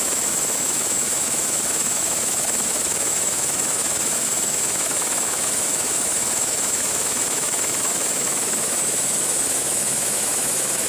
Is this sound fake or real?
fake